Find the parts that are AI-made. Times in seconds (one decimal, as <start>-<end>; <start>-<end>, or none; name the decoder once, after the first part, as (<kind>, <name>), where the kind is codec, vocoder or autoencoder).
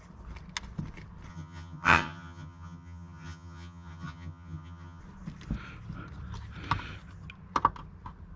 1.3-5.0 (vocoder, HiFi-GAN)